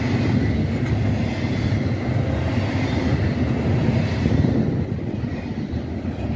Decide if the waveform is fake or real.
real